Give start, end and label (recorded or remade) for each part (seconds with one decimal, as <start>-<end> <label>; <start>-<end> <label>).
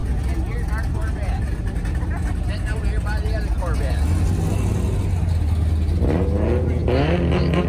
0.0-7.7 recorded